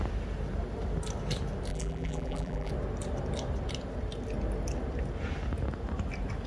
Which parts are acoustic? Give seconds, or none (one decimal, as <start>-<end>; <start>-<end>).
0.0-1.7; 2.7-6.5